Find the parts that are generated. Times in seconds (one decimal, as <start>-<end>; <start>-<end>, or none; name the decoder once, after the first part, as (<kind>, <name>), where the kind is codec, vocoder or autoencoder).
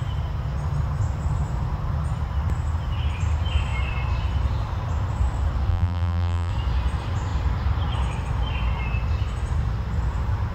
5.7-6.5 (vocoder, BigVGAN v2)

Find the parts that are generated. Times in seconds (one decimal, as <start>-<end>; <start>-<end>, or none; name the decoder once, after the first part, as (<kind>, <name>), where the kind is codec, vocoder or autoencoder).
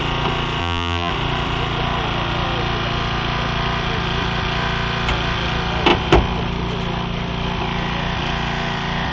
0.6-1.1 (vocoder, BigVGAN v2)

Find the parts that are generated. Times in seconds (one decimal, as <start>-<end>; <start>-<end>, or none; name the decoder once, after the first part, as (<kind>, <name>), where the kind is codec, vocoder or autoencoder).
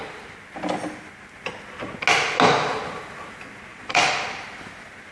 3.7-4.2 (vocoder, BigVGAN v2)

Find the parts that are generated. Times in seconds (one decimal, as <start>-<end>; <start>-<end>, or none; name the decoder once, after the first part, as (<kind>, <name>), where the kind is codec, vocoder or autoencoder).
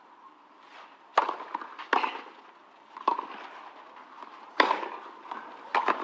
none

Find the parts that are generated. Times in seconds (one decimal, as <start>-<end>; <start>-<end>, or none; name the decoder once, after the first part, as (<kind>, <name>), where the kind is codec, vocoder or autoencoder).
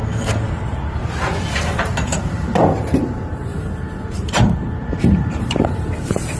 0.0-3.5 (vocoder, BigVGAN v2); 4.1-6.4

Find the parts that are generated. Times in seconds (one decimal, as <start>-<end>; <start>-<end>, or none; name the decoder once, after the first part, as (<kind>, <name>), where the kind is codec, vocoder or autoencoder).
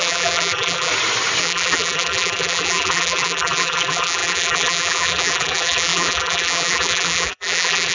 0.0-0.9 (vocoder, BigVGAN v2); 1.4-7.9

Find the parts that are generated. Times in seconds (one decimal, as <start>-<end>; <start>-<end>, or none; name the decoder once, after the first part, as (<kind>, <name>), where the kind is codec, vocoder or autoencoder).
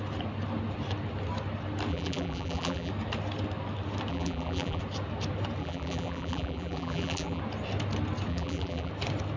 1.9-2.9 (vocoder, BigVGAN v2); 4.1-4.8; 5.6-7.4; 8.3-8.9